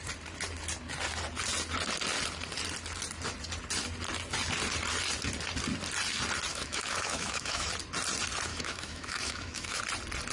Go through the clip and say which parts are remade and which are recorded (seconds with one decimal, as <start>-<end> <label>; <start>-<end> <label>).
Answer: 0.0-6.5 recorded; 6.5-7.7 remade; 7.7-8.5 recorded; 8.5-9.8 remade; 9.8-10.3 recorded